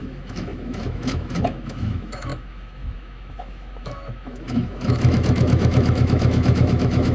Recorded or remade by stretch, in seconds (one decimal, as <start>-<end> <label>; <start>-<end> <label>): 0.0-7.1 remade